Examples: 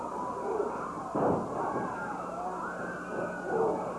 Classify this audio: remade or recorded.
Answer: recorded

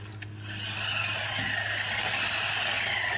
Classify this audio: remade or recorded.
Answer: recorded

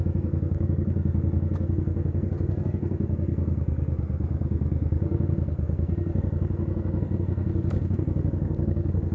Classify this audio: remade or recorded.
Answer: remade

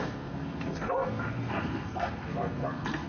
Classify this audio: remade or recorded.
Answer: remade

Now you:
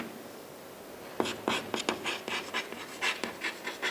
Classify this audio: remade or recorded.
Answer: recorded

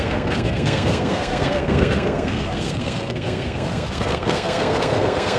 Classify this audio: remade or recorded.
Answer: remade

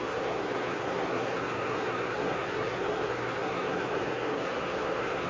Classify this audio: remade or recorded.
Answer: remade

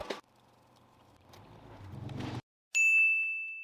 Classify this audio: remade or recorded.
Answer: recorded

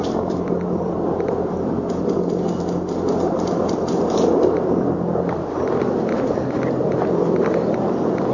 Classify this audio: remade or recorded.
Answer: recorded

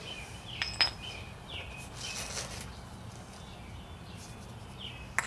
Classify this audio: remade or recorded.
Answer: recorded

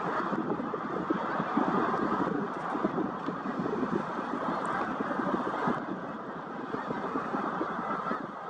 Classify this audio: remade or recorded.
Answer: recorded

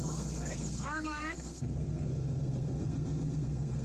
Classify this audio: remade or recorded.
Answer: remade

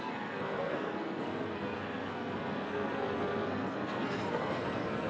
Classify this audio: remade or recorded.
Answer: remade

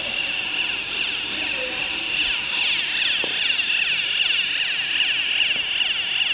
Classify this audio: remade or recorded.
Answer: recorded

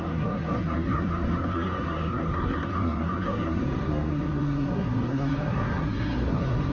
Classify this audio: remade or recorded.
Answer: remade